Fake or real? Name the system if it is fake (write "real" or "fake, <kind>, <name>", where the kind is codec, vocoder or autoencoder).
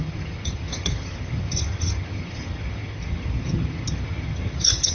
fake, vocoder, HiFi-GAN